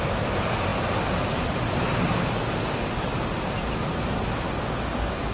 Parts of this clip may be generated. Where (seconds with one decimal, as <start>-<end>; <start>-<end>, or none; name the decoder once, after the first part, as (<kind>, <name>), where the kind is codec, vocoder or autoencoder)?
none